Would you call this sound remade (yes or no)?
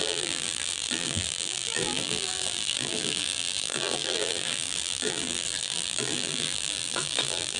yes